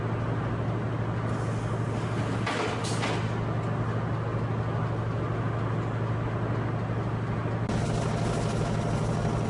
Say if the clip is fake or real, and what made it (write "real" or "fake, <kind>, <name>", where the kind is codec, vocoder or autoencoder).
real